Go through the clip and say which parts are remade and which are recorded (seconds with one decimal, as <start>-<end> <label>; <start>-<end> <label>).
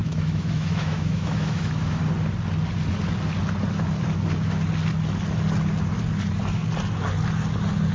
0.0-2.0 remade; 2.0-7.9 recorded